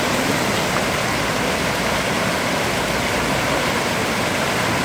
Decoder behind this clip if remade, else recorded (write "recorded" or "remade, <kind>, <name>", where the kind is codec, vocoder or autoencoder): recorded